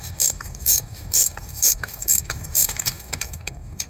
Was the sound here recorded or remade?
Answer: remade